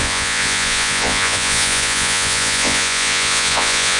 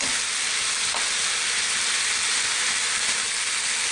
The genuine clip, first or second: second